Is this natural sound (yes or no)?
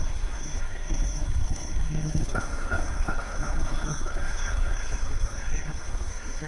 no